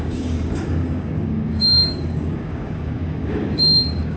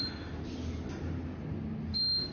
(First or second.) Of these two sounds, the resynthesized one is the first